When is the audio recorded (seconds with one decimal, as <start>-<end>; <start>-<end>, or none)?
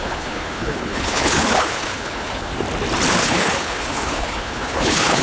2.5-3.1